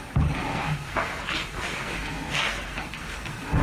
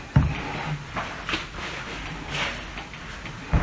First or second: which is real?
second